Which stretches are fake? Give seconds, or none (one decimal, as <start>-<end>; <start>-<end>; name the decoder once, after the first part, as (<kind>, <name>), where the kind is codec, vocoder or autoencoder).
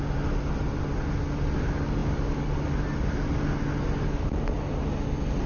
none